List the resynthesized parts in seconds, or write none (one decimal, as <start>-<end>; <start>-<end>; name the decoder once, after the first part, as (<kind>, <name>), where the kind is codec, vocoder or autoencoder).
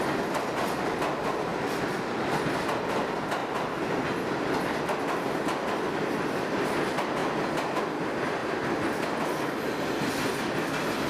1.5-2.6 (vocoder, BigVGAN v2); 3.4-4.0